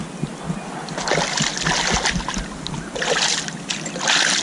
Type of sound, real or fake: real